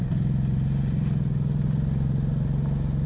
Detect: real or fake real